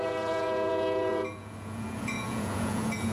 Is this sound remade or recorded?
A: remade